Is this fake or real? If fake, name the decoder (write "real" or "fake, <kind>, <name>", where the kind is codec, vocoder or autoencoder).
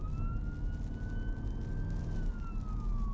real